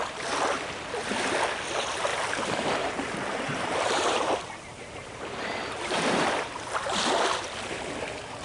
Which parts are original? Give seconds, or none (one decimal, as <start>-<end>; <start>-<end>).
0.0-2.1; 6.0-8.4